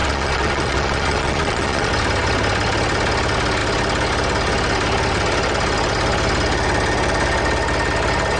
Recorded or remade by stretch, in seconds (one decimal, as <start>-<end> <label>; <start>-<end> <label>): 0.0-1.9 remade; 1.9-8.4 recorded